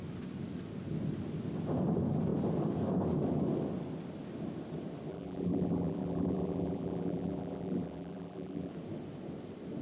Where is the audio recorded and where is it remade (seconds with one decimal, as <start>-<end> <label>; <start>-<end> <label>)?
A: 0.0-5.1 recorded; 5.1-8.7 remade; 8.7-9.8 recorded